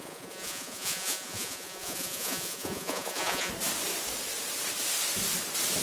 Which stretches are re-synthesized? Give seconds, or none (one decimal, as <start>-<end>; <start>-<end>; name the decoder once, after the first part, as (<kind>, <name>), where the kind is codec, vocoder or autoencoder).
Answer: 0.0-3.5 (vocoder, Vocos)